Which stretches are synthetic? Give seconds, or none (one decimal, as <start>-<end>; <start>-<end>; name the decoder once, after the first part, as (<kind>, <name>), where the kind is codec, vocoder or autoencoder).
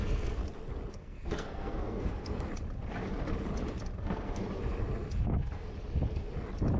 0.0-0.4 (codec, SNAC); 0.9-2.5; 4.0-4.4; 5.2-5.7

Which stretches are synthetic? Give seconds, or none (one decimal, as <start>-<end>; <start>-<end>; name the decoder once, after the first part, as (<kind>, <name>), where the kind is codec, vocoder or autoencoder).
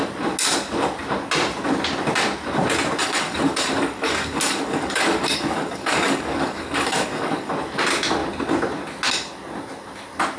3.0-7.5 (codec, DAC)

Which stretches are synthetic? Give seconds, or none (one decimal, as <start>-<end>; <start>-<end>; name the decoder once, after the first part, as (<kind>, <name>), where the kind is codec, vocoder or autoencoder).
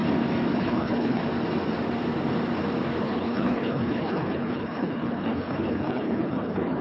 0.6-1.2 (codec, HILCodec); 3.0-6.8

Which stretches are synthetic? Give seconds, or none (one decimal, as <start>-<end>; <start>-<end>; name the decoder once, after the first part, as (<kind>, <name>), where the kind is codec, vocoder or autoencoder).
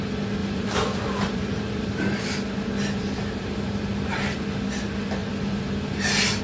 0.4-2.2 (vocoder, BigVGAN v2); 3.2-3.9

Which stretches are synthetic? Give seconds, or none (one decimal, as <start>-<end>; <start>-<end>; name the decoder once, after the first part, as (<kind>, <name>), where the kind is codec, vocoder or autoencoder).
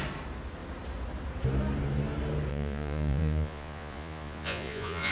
2.5-5.1 (vocoder, Vocos)